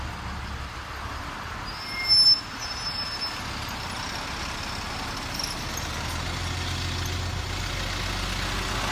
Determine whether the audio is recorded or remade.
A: recorded